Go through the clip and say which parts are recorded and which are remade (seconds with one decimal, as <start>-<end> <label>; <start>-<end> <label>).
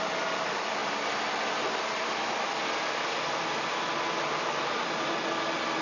0.0-5.8 recorded